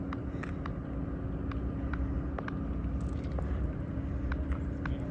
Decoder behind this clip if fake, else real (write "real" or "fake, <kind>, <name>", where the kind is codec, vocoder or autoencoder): real